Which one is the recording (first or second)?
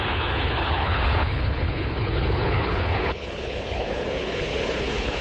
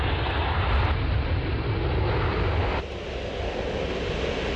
second